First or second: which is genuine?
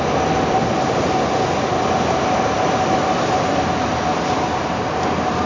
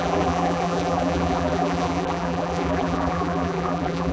first